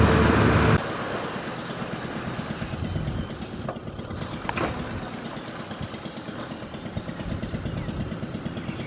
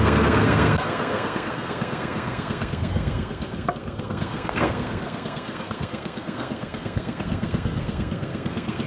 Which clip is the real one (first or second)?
first